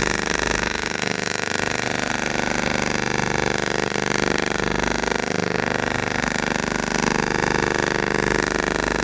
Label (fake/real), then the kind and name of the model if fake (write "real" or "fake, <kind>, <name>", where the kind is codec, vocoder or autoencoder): fake, autoencoder, DAC-VAE